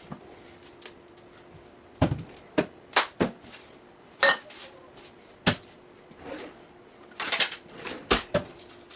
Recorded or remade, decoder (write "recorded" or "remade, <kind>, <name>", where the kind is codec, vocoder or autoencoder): recorded